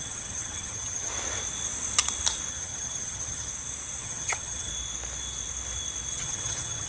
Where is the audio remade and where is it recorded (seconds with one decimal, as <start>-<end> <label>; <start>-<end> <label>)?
0.0-1.1 remade; 1.1-2.5 recorded; 2.5-3.5 remade; 3.5-4.0 recorded; 4.0-4.7 remade; 4.7-6.1 recorded; 6.1-6.9 remade